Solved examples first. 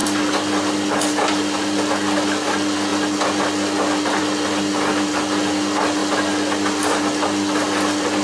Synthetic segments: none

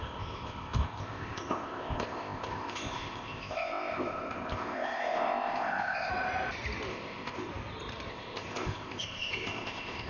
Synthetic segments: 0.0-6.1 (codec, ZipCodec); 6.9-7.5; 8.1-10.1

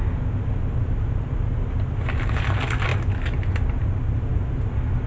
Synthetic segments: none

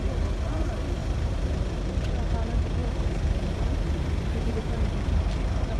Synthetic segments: 1.0-2.1 (vocoder, BigVGAN v2); 2.8-5.8

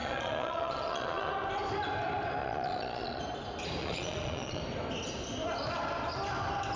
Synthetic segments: 0.0-1.3 (vocoder, Vocos); 2.4-3.2; 3.8-4.6